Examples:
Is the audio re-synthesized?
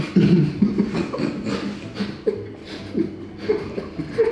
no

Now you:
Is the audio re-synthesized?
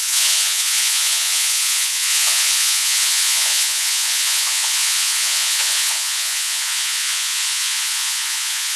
yes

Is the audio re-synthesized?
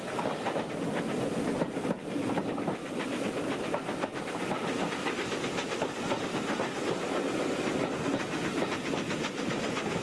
no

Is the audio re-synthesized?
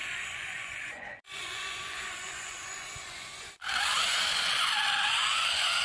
yes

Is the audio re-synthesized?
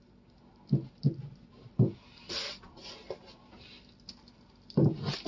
no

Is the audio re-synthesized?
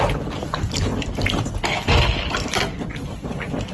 no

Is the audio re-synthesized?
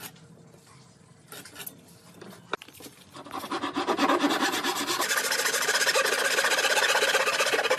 no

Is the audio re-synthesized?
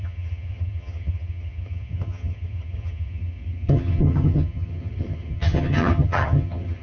yes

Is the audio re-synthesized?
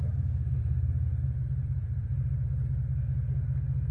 no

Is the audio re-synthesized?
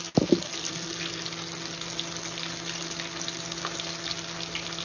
no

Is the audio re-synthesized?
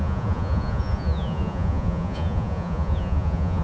yes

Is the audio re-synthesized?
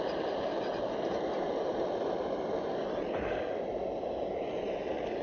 no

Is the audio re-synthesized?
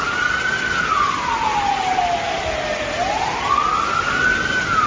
no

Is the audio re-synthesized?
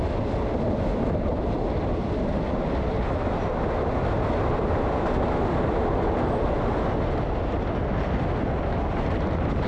no